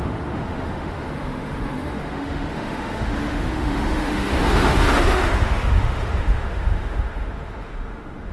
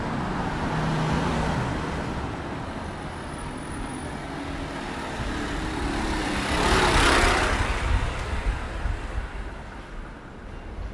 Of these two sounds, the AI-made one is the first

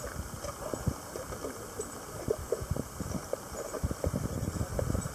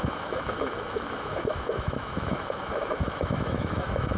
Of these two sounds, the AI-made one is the second